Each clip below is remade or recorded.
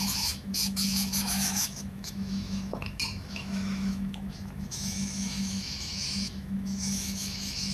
remade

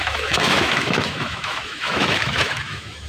remade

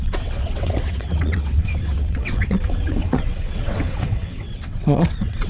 remade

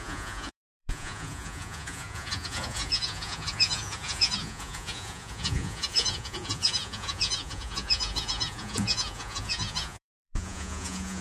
remade